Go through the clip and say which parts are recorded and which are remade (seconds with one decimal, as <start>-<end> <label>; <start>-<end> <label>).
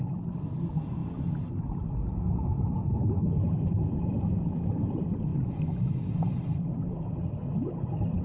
0.0-8.2 recorded